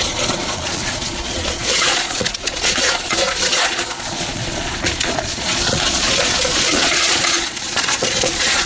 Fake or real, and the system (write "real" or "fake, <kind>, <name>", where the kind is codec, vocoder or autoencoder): fake, vocoder, Vocos